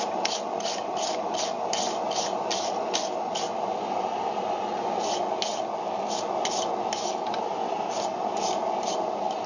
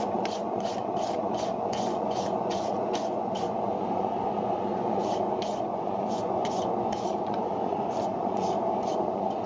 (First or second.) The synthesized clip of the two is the second